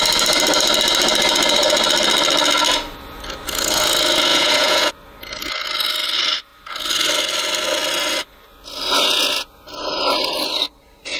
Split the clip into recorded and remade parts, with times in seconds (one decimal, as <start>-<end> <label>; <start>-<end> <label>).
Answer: 0.0-4.3 recorded; 4.3-4.9 remade; 4.9-11.2 recorded